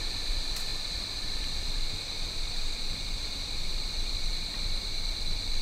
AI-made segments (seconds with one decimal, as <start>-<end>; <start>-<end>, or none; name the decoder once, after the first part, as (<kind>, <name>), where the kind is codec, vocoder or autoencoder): 0.0-5.6 (vocoder, BigVGAN v2)